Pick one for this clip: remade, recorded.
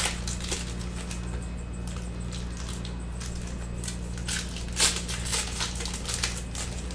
recorded